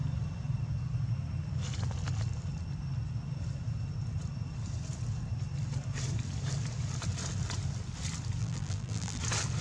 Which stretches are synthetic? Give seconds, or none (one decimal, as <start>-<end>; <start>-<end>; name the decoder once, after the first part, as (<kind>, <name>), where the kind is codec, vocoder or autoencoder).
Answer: 8.4-9.2 (vocoder, BigVGAN v2)